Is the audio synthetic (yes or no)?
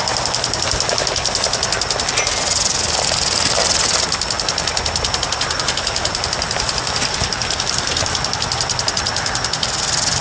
no